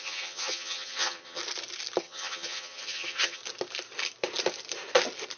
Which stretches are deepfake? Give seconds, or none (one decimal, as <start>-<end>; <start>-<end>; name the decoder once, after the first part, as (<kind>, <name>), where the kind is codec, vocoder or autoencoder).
0.0-1.4 (vocoder, HiFi-GAN); 2.0-3.4